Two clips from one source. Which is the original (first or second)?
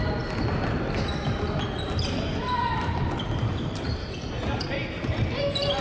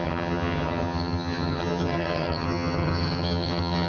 first